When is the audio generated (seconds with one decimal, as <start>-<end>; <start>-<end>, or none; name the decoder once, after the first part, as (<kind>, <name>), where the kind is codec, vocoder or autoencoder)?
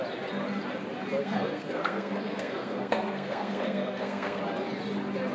1.2-4.4 (codec, SNAC)